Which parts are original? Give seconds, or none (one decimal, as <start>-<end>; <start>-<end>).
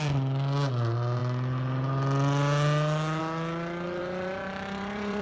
0.0-4.0